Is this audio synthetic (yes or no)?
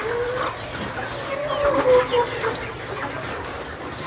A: no